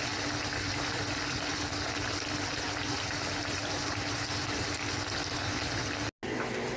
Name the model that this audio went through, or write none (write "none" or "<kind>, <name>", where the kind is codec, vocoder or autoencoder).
none